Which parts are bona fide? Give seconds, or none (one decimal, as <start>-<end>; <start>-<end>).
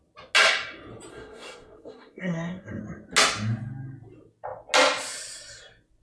0.0-1.1; 2.8-6.0